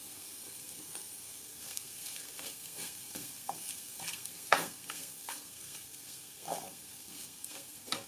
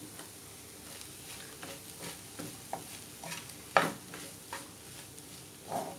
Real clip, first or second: second